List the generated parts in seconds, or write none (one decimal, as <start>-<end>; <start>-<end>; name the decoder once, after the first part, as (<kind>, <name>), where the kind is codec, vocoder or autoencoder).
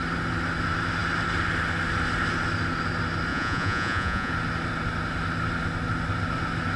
3.3-4.3 (vocoder, Vocos)